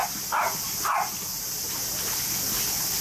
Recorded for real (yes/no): yes